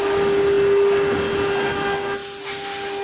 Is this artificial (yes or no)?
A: no